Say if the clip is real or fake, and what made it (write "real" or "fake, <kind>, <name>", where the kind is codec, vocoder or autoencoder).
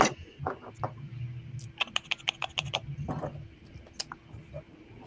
real